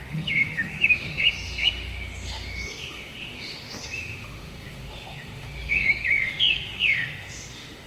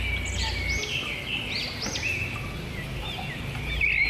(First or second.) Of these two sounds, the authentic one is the second